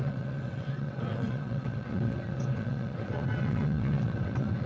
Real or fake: fake